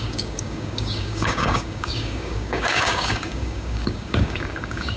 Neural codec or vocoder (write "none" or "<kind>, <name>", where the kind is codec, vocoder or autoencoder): codec, DAC